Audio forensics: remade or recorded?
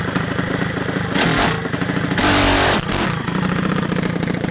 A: recorded